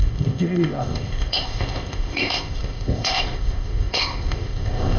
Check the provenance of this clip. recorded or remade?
remade